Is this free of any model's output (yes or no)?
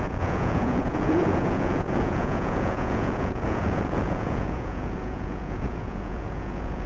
no